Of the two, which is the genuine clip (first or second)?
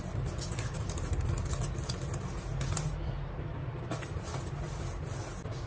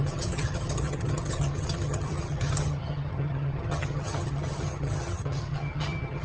first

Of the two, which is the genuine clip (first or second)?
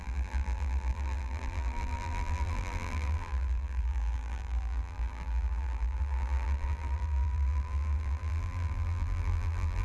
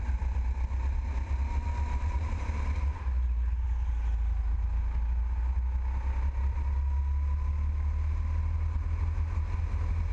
second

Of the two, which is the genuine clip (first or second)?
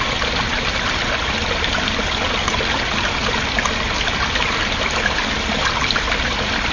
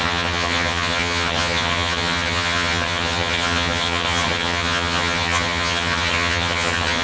first